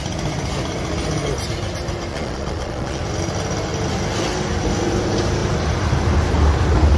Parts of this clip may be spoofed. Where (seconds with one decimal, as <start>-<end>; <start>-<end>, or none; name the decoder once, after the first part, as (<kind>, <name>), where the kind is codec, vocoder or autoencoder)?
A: 2.1-3.0 (vocoder, Vocos)